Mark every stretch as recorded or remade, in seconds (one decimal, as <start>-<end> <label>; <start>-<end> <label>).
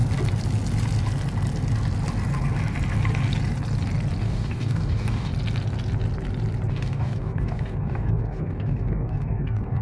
0.0-4.2 recorded; 4.2-5.3 remade; 5.3-6.7 recorded; 6.7-9.8 remade